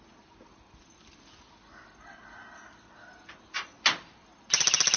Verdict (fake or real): real